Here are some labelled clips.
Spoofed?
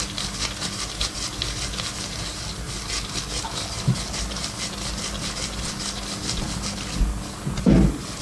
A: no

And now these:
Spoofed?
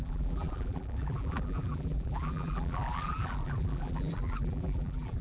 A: yes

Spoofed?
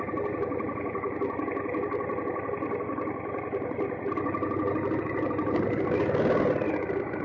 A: no